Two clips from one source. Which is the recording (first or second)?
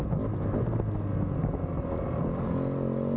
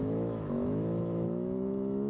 first